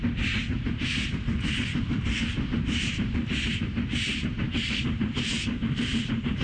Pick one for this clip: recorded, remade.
remade